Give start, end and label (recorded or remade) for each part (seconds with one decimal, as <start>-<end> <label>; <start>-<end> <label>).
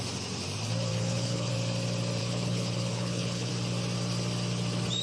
0.0-0.9 recorded; 0.9-1.5 remade; 1.5-2.2 recorded; 2.2-3.5 remade; 3.5-5.0 recorded